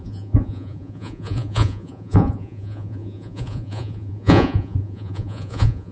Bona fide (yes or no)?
no